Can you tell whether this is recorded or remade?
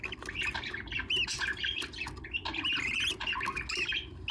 recorded